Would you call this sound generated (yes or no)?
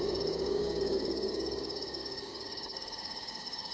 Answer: yes